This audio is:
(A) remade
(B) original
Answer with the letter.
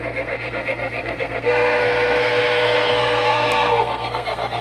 A